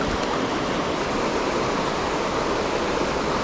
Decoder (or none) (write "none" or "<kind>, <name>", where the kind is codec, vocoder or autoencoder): none